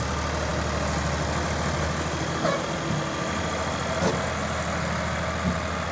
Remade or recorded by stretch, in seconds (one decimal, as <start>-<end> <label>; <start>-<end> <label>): 0.0-5.9 recorded